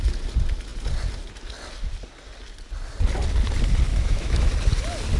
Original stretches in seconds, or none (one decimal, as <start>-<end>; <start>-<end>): 0.0-3.9; 4.5-5.2

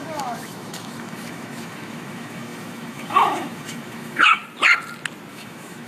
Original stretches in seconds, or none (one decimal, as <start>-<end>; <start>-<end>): 4.4-5.3

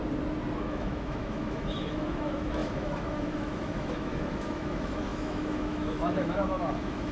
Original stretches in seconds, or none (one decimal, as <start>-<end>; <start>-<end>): 0.0-0.6

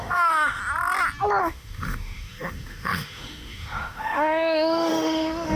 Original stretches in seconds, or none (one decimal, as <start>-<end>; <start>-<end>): 0.6-1.4

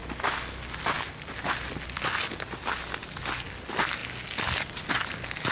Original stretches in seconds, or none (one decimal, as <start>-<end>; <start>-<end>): 0.0-5.5